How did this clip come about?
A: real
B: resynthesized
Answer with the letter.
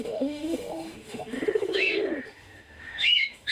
B